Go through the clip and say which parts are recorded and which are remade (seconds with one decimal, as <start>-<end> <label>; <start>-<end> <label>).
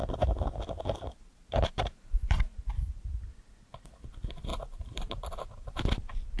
0.0-1.3 recorded; 1.3-3.0 remade; 3.0-4.5 recorded; 4.5-5.7 remade; 5.7-6.4 recorded